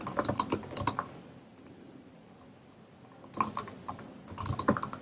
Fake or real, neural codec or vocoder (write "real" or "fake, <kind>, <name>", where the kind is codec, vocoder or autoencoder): real